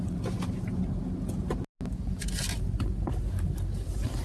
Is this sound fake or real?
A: real